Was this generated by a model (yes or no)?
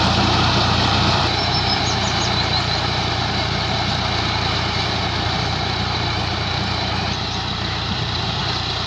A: yes